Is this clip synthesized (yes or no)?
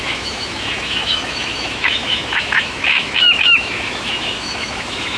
yes